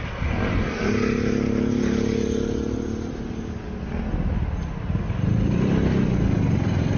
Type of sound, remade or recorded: recorded